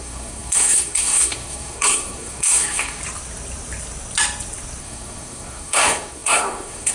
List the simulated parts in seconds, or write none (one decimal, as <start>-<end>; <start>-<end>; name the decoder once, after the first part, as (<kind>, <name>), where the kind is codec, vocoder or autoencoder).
0.0-3.0 (codec, SNAC); 4.8-6.9